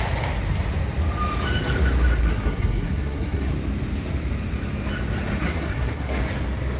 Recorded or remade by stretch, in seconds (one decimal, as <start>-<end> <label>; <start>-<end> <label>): 0.0-2.2 recorded; 2.2-3.5 remade; 3.5-5.4 recorded; 5.4-6.2 remade; 6.2-6.8 recorded